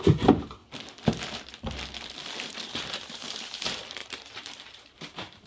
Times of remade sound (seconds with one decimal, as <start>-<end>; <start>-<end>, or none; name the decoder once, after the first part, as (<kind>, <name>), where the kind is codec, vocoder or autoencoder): 0.0-0.6 (vocoder, BigVGAN v2); 2.5-5.5

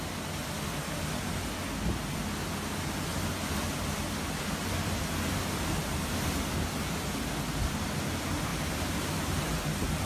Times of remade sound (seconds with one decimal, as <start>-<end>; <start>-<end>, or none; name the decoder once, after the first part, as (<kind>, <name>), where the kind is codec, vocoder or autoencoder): 8.5-10.1 (vocoder, BigVGAN v2)

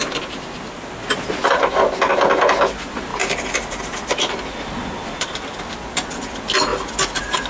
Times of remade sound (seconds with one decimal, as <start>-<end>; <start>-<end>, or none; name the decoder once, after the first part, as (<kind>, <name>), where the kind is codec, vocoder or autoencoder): 3.1-5.7 (vocoder, BigVGAN v2); 6.7-7.5

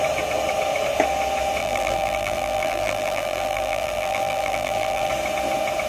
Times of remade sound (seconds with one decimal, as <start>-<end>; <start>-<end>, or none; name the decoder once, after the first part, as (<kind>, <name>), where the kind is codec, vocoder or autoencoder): 1.6-5.1 (vocoder, BigVGAN v2)

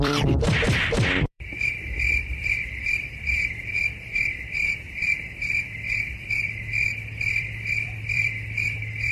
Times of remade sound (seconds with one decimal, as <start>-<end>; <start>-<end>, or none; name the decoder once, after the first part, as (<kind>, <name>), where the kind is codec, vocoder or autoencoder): 0.0-1.5 (vocoder, BigVGAN v2); 2.4-9.1

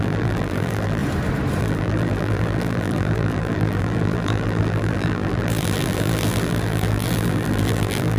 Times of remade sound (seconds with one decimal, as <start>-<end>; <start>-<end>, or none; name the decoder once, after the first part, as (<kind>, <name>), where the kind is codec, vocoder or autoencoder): 0.0-1.0 (vocoder, BigVGAN v2); 1.6-8.2

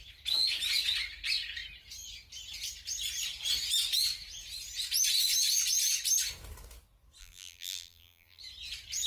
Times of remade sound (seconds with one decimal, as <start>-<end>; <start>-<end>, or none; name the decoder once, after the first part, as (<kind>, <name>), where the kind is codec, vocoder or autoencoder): 7.2-8.4 (vocoder, BigVGAN v2)